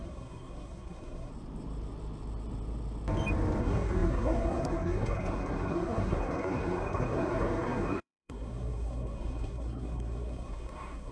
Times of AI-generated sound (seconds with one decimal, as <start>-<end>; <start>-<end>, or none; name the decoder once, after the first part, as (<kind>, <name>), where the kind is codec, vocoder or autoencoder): 0.0-1.3 (codec, SNAC); 3.6-11.1